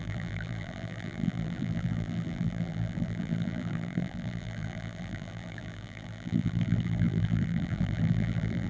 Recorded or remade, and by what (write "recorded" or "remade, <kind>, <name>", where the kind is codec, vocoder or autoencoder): remade, vocoder, BigVGAN v2